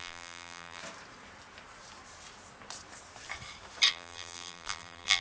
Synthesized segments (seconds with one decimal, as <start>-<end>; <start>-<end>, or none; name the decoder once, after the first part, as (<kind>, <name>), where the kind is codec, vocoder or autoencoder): 0.0-0.8 (vocoder, BigVGAN v2); 3.9-5.2